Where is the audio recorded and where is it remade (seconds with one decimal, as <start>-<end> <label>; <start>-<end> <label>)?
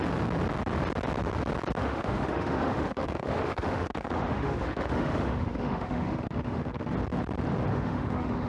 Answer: 0.0-1.8 recorded; 1.8-6.9 remade; 6.9-7.7 recorded; 7.7-8.5 remade